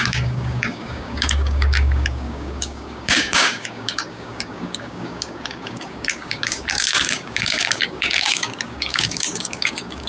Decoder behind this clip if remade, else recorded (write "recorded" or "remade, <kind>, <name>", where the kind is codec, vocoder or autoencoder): remade, codec, DAC